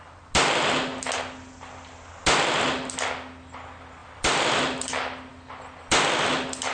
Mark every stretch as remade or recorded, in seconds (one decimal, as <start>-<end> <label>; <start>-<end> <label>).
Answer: 0.0-4.0 recorded; 4.0-4.6 remade; 4.6-6.7 recorded